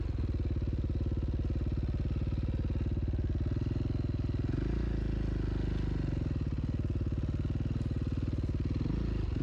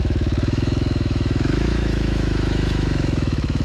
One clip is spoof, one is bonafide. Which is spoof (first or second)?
second